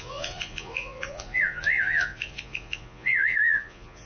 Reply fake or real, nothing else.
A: fake